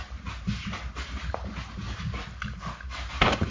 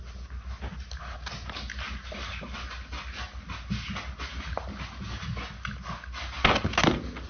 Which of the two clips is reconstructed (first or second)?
first